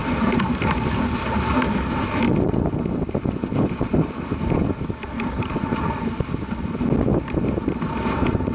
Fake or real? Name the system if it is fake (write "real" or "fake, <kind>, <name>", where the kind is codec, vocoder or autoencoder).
real